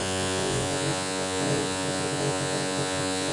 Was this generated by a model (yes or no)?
yes